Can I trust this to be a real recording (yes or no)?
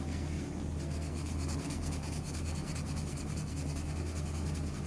no